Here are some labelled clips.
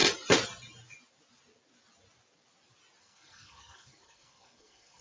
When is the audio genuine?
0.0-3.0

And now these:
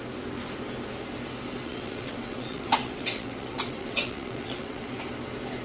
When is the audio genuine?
0.0-1.6; 5.0-5.6

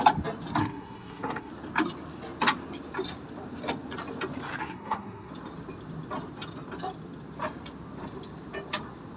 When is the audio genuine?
0.0-0.6; 1.5-4.6; 5.3-9.2

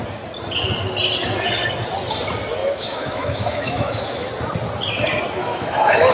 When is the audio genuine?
0.0-2.6; 4.3-5.4

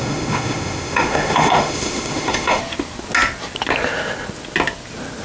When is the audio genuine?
2.6-5.2

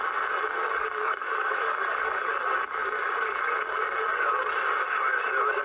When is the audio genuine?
0.0-0.6; 2.3-5.6

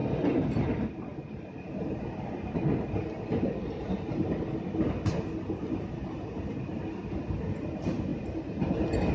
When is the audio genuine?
0.0-9.1

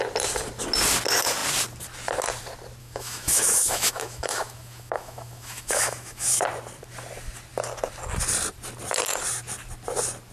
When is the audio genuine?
0.0-2.8; 6.4-10.3